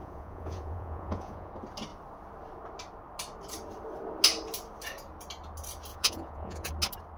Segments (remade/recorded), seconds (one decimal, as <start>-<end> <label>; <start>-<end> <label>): 0.0-1.5 remade; 1.5-5.9 recorded; 5.9-6.7 remade; 6.7-7.2 recorded